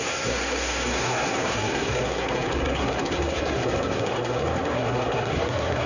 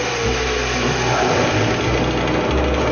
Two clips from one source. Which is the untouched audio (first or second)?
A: second